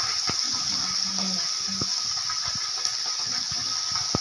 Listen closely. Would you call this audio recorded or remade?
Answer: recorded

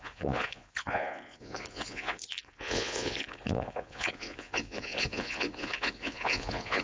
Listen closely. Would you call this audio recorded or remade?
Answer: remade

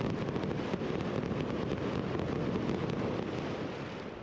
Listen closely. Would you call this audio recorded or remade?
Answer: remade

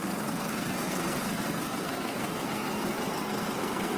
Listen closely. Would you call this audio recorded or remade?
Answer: remade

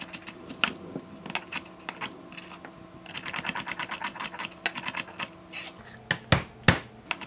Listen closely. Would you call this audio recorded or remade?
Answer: recorded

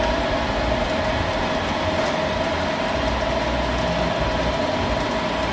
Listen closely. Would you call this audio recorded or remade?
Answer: recorded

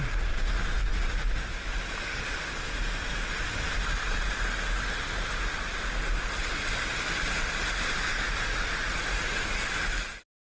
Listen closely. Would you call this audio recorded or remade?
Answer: recorded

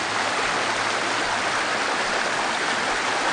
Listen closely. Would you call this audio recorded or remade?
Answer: recorded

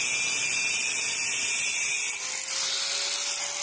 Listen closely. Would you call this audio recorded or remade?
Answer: recorded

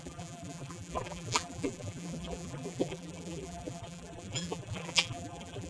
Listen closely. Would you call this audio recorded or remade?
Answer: remade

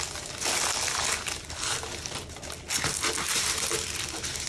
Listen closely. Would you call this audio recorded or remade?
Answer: recorded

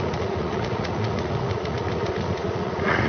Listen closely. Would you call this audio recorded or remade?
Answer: remade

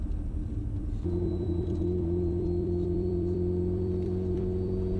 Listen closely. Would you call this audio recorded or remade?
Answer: remade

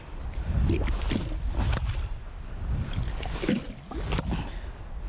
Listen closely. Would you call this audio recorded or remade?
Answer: recorded